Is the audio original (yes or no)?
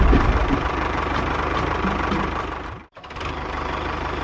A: no